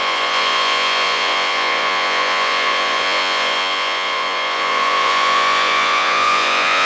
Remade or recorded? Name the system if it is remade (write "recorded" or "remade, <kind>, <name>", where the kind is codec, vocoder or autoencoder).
remade, vocoder, Vocos